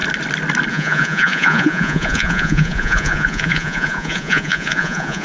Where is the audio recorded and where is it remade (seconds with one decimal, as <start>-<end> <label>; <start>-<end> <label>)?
0.0-0.7 recorded; 0.7-5.2 remade